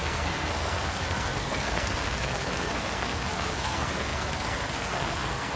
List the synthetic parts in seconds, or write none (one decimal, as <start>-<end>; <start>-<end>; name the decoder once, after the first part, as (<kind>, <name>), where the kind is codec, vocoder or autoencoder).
0.0-5.6 (codec, SNAC)